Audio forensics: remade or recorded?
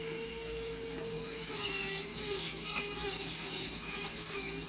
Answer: remade